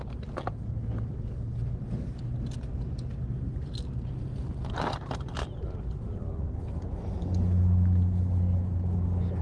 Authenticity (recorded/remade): recorded